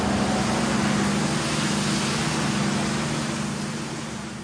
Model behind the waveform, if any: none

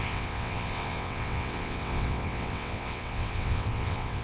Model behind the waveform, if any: vocoder, WaveNeXt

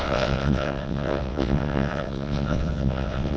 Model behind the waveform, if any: vocoder, WaveNeXt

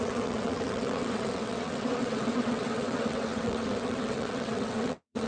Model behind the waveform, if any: vocoder, WaveNeXt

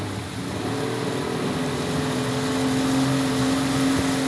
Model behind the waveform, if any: none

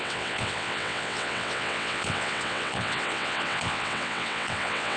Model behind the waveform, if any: vocoder, WaveNeXt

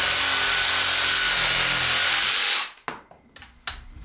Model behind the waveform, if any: none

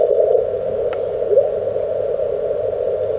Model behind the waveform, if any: none